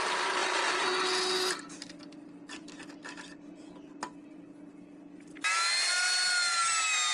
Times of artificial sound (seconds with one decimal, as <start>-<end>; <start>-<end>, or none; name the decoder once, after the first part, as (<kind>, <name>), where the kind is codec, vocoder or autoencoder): none